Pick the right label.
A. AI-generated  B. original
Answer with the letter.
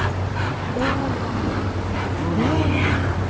B